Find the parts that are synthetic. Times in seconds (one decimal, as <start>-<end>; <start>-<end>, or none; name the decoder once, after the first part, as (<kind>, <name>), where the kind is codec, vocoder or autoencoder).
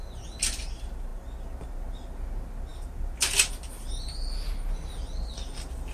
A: none